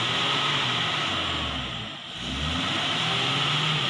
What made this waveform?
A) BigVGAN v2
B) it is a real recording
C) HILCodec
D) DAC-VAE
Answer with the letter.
B